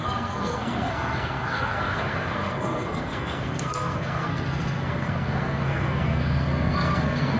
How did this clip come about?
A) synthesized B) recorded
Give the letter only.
A